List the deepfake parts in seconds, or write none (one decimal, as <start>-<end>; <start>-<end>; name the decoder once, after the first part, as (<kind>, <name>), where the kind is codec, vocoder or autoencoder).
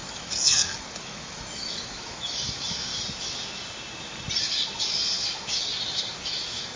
0.0-2.9 (autoencoder, DAC-VAE); 6.2-6.8